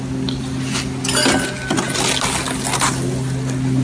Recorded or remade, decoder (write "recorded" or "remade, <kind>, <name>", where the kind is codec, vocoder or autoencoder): recorded